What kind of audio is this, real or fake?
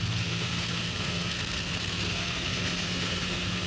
fake